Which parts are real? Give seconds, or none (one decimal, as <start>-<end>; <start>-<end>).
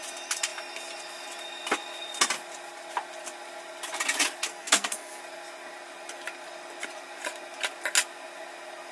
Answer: 0.0-4.5; 5.2-8.9